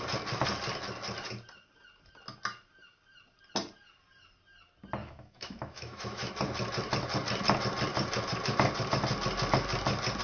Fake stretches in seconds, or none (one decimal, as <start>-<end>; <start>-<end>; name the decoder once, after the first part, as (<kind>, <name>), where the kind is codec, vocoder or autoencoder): 5.0-6.3 (autoencoder, DAC-VAE)